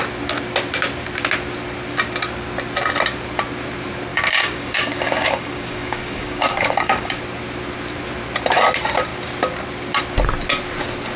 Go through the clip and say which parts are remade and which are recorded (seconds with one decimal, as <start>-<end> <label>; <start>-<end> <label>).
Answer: 0.0-4.1 recorded; 4.1-7.2 remade; 7.2-11.2 recorded